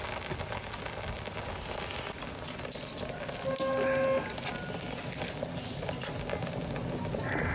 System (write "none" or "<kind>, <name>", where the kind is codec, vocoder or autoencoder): none